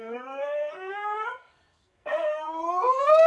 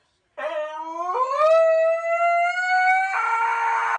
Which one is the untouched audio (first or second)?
second